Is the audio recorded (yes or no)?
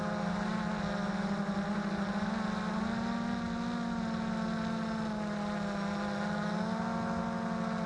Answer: yes